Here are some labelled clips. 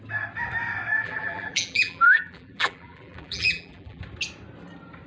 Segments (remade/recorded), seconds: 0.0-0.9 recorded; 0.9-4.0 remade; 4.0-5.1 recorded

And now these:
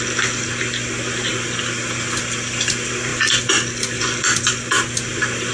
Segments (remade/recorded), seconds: 0.0-3.1 recorded; 3.1-4.0 remade; 4.0-5.5 recorded

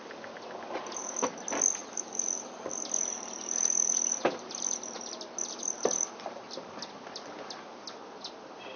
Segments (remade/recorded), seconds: 0.0-8.8 recorded

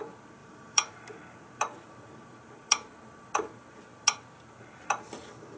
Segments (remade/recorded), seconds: 0.0-0.4 recorded; 0.4-1.0 remade; 1.0-5.6 recorded

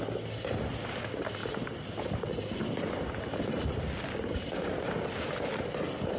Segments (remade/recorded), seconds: 0.0-6.2 recorded

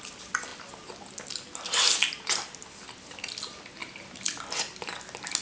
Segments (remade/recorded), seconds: 0.0-3.8 recorded; 3.8-4.4 remade; 4.4-5.4 recorded

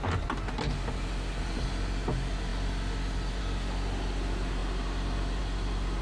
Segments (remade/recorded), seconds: 0.0-6.0 recorded

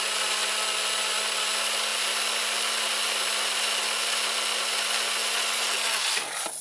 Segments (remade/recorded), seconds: 0.0-6.6 recorded